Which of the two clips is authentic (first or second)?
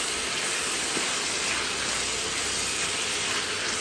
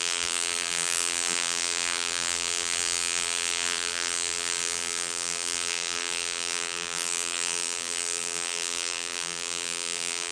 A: first